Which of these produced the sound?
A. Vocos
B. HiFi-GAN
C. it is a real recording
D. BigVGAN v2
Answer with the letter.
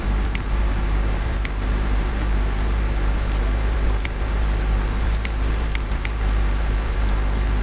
D